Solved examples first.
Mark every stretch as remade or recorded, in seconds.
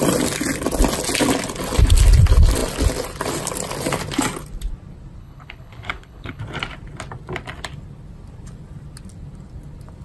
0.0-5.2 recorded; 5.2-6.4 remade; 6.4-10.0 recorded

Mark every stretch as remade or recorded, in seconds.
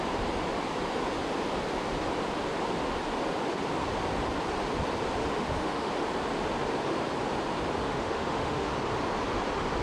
0.0-5.2 recorded; 5.2-5.9 remade; 5.9-7.8 recorded; 7.8-8.7 remade; 8.7-9.8 recorded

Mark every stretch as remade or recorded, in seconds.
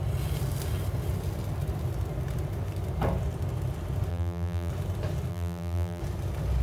0.0-4.1 recorded; 4.1-4.7 remade; 4.7-5.3 recorded; 5.3-6.0 remade; 6.0-6.6 recorded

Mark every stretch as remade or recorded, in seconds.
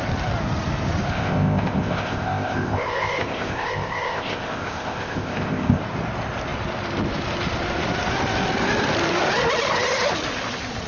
0.0-1.1 recorded; 1.1-5.8 remade; 5.8-10.9 recorded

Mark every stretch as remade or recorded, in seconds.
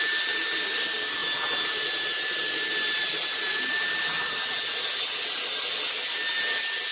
0.0-6.9 recorded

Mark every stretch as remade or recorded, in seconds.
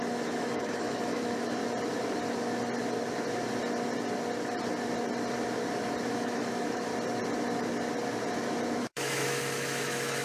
0.0-1.6 remade; 1.6-6.1 recorded; 6.1-6.9 remade; 6.9-8.8 recorded; 8.8-10.2 remade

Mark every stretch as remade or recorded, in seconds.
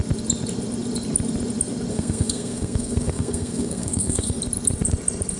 0.0-1.9 recorded; 1.9-4.4 remade; 4.4-5.4 recorded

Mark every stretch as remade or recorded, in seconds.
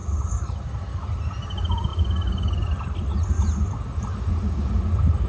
0.0-5.3 recorded